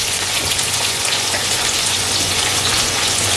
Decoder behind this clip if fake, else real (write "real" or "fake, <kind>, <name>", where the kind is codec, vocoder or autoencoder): fake, vocoder, Vocos